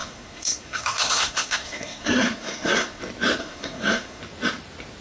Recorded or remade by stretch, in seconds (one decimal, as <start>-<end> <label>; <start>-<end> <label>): 0.0-3.0 remade; 3.0-3.4 recorded; 3.4-4.2 remade; 4.2-5.0 recorded